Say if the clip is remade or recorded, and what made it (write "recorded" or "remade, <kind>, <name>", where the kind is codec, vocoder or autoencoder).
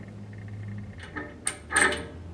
recorded